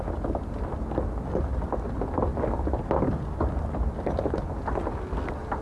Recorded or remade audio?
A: recorded